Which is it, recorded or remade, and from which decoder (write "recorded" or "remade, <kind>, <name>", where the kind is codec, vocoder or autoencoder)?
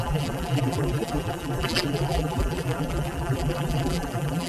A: remade, vocoder, BigVGAN v2